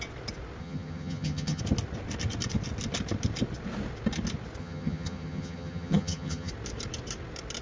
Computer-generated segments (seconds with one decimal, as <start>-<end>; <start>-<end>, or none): 0.6-1.6; 4.6-6.5

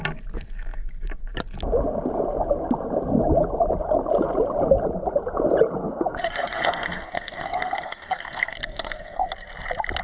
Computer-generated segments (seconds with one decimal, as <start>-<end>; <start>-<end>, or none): 5.8-9.3

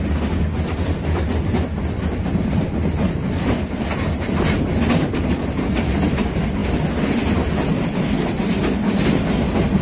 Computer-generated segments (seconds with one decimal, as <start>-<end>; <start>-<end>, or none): none

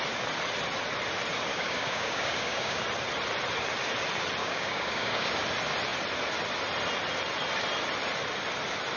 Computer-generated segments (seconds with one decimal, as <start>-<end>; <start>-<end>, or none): 1.5-2.8; 4.4-5.3

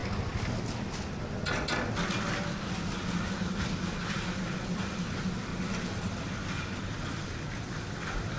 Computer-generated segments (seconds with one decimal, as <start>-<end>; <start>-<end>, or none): none

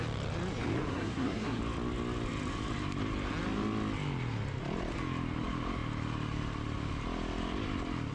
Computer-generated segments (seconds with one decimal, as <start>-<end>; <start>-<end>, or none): 0.9-1.6

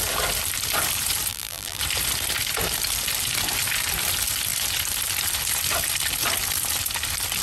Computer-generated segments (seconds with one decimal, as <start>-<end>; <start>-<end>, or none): 1.3-1.8